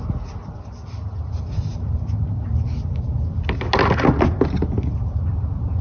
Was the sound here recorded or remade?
recorded